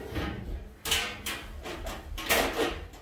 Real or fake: real